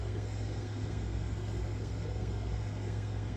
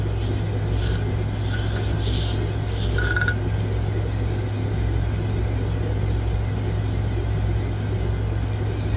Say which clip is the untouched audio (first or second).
second